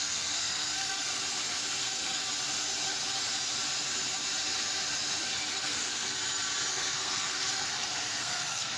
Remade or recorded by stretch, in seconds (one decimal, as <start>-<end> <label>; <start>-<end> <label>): 0.0-1.2 remade; 1.2-1.8 recorded; 1.8-2.2 remade; 2.2-5.5 recorded; 5.5-6.1 remade; 6.1-6.7 recorded; 6.7-8.8 remade